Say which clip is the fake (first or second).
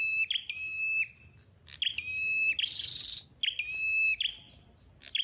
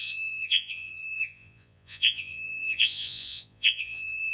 second